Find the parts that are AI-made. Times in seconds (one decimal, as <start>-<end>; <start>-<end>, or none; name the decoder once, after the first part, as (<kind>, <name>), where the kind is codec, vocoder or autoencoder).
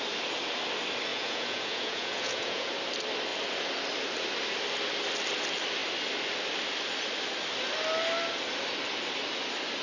1.1-2.7 (vocoder, Vocos)